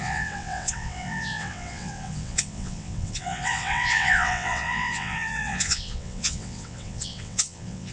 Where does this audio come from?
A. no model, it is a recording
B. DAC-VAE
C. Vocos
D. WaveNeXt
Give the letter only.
D